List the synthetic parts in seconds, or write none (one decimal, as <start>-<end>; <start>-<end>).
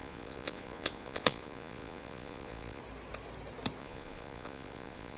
0.0-2.8; 3.8-5.2